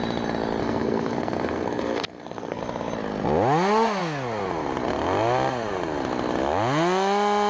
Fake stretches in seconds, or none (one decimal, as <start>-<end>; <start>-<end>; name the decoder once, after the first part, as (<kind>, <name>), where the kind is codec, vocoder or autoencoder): 0.6-2.6 (codec, SNAC)